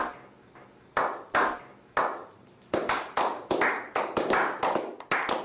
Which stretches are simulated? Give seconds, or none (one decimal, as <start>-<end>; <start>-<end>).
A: 2.2-4.3